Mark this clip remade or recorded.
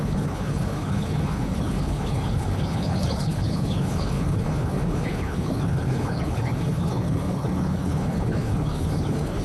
remade